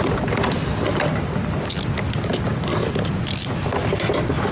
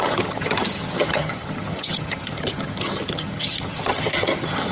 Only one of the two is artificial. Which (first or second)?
second